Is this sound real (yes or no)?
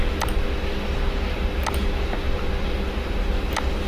yes